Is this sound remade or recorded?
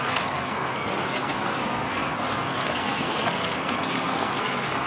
remade